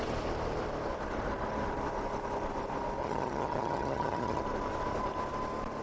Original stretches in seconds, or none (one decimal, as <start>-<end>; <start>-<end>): 0.0-3.0; 4.4-5.8